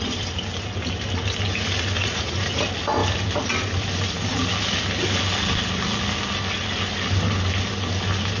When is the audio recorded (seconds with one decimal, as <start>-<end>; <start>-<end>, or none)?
0.0-2.0; 2.6-8.4